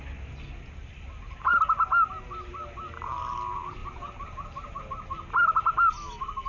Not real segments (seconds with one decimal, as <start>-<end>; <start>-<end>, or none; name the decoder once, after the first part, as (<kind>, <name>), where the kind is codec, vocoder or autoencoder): 2.5-3.2 (vocoder, BigVGAN v2); 3.8-4.8